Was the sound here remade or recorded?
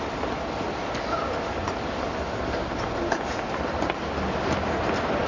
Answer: recorded